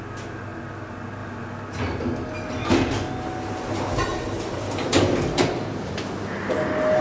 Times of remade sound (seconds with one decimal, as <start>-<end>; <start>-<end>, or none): none